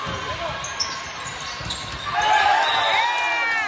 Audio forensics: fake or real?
real